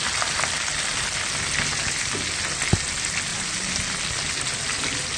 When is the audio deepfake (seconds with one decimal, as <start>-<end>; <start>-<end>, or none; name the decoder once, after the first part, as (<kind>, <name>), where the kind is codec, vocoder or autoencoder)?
3.3-3.9 (vocoder, BigVGAN v2)